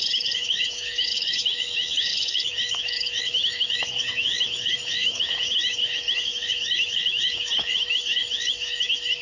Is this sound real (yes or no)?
no